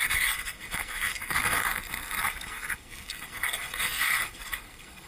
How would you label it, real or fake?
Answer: fake